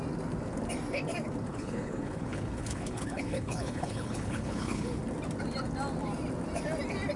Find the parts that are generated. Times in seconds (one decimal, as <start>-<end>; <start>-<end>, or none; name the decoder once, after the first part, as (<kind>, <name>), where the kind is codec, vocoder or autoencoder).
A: 1.5-5.0 (codec, HILCodec)